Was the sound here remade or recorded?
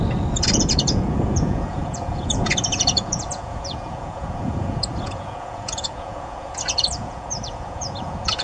remade